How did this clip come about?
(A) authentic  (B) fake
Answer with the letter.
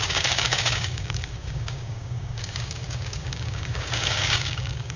B